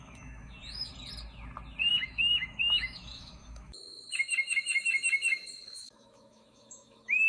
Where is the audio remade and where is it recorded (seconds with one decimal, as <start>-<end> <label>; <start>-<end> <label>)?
0.0-0.9 remade; 0.9-1.9 recorded; 1.9-7.3 remade